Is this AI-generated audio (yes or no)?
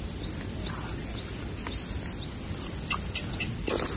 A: no